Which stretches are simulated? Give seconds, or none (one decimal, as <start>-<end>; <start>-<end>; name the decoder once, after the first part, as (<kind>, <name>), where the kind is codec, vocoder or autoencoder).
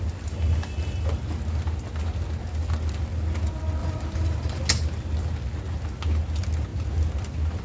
3.8-4.6 (vocoder, BigVGAN v2)